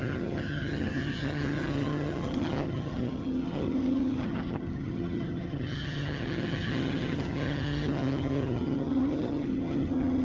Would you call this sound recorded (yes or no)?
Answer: no